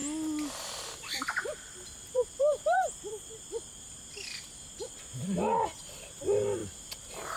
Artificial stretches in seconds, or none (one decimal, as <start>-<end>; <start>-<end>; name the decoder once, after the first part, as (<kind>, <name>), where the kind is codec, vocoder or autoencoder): none